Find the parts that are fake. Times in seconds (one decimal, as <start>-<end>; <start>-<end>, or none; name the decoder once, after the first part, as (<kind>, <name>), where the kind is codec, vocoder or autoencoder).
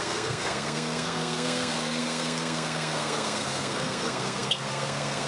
0.0-5.3 (codec, SNAC)